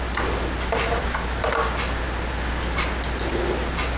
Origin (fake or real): real